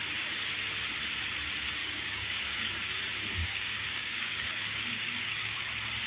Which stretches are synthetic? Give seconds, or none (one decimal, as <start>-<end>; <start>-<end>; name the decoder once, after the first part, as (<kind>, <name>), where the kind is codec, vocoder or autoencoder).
1.8-2.7 (codec, DAC); 3.4-5.6